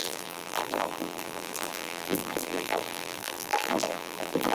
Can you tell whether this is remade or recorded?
remade